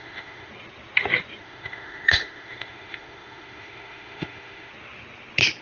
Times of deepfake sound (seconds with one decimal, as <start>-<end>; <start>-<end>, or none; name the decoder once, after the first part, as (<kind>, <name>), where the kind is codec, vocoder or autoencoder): 0.0-0.5 (autoencoder, DAC-VAE); 1.4-4.7